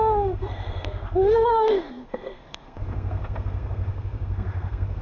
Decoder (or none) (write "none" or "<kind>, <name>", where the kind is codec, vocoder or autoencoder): codec, SNAC